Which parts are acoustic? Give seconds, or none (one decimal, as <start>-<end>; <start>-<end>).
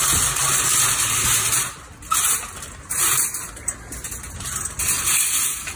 0.0-5.7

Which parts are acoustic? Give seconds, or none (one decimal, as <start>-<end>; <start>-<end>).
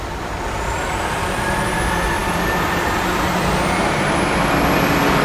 0.0-5.2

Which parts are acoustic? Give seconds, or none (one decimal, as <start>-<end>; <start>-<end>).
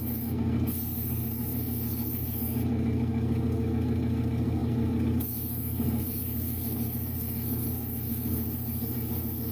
none